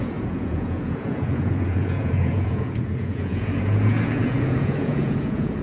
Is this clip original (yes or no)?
no